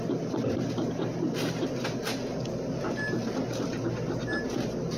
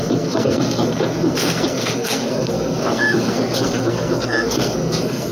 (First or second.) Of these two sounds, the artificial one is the second